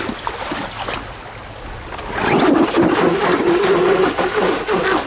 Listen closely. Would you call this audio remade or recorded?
recorded